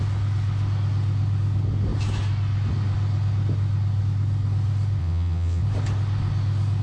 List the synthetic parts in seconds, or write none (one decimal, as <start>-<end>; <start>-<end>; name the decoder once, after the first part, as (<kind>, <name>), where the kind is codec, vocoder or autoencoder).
5.0-5.6 (vocoder, WaveNeXt)